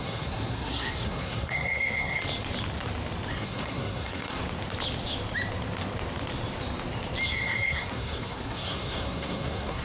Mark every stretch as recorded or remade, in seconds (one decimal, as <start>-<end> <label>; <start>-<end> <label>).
0.0-2.2 remade; 2.2-3.3 recorded; 3.3-4.4 remade; 4.4-7.3 recorded; 7.3-9.8 remade